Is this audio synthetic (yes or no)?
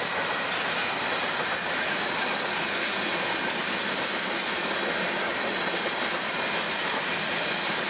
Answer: no